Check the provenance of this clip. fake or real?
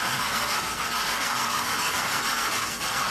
fake